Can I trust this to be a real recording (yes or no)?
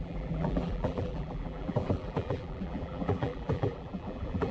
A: no